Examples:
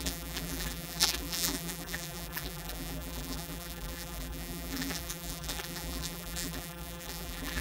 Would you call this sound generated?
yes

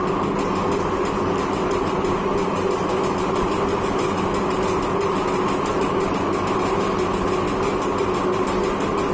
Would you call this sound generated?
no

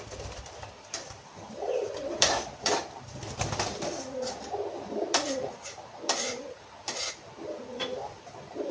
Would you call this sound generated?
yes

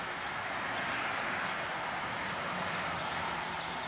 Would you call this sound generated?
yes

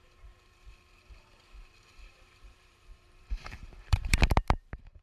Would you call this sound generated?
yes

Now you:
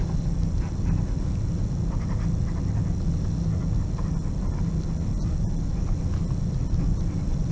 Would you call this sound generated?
no